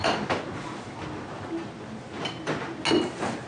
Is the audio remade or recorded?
recorded